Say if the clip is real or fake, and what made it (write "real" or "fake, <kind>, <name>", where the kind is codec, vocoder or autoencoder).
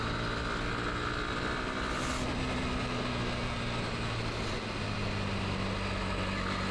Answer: real